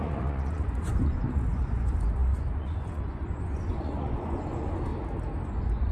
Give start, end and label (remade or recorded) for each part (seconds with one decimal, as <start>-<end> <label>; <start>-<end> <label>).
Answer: 0.0-4.9 remade; 4.9-5.5 recorded; 5.5-5.9 remade